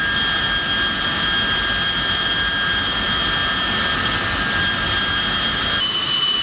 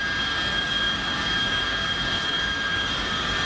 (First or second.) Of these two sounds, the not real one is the second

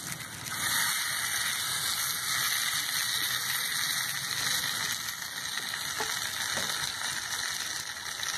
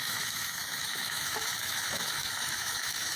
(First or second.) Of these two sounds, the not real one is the second